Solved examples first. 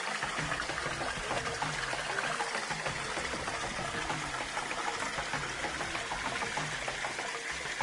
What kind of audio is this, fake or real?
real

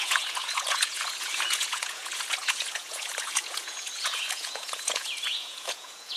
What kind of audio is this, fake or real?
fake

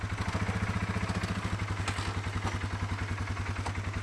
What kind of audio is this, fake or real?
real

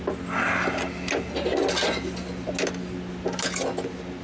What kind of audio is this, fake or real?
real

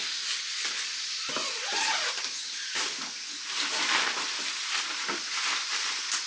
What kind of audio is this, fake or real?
real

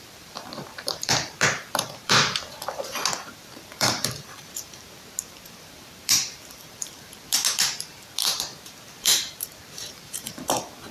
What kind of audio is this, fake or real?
fake